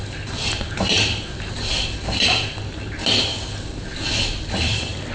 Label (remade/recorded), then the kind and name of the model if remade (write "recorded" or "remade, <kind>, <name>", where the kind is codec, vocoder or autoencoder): recorded